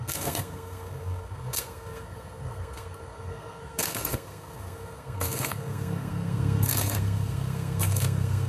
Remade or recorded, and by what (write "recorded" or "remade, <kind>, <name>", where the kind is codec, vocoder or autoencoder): remade, codec, SNAC